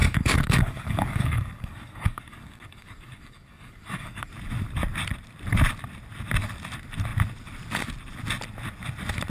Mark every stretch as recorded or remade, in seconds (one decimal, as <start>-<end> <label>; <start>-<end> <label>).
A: 0.0-4.3 remade; 4.3-9.3 recorded